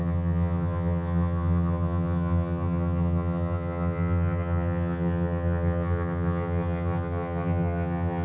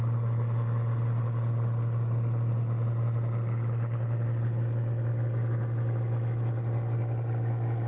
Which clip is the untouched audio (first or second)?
second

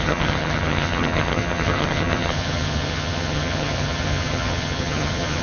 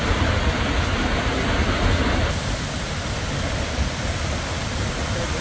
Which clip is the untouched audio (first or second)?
second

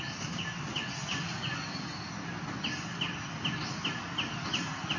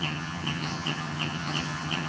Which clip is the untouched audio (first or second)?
first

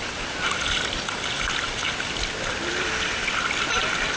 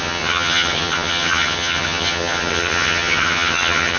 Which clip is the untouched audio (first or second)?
first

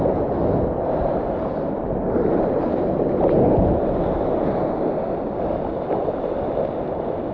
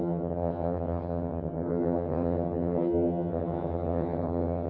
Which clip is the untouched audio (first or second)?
first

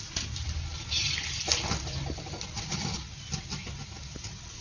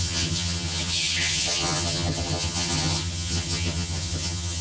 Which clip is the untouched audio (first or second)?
first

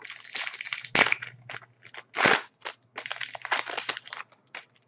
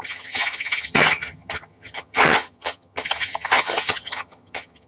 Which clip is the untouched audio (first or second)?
first